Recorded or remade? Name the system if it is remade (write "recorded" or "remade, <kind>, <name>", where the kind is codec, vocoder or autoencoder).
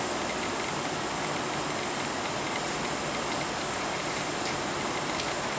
recorded